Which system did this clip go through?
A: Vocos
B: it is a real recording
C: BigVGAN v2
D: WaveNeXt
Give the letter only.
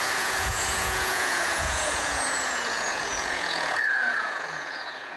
A